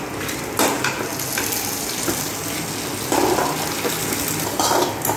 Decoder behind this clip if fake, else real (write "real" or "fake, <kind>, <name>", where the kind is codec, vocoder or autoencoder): real